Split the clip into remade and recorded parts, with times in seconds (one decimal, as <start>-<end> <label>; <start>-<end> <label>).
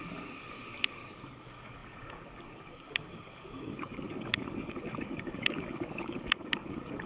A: 0.0-7.1 remade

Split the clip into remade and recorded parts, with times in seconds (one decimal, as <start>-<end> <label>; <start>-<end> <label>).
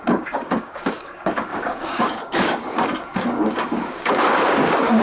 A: 0.0-5.0 remade